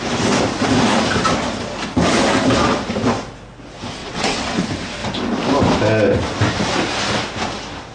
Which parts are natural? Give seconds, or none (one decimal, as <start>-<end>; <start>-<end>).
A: 0.0-4.0; 4.6-7.9